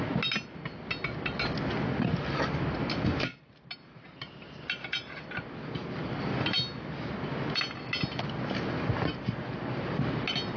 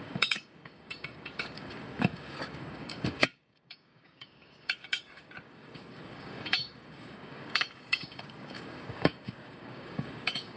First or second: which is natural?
first